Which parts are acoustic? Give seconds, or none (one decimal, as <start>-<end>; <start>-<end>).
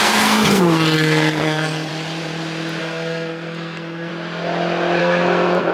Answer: 1.9-2.8; 4.1-5.0